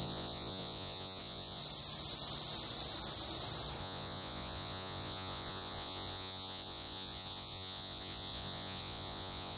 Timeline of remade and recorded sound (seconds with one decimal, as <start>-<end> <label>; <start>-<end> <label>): 0.0-1.6 remade; 1.6-3.8 recorded; 3.8-9.6 remade